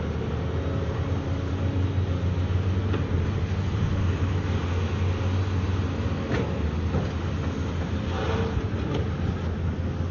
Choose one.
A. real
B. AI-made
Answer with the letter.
A